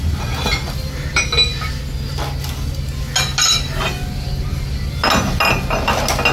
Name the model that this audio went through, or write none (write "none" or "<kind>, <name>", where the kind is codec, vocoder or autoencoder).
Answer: none